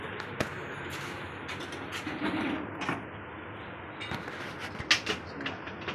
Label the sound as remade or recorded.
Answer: recorded